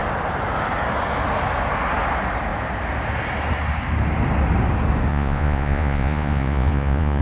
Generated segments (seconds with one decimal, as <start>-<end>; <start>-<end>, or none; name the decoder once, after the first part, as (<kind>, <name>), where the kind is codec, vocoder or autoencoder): 5.1-7.2 (vocoder, Vocos)